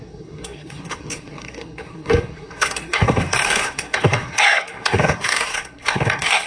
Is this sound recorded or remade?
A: remade